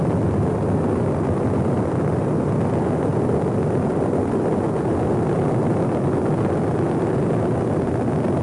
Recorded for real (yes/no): yes